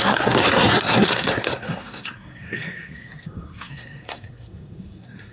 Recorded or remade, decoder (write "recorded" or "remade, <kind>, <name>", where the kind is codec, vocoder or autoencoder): remade, codec, SNAC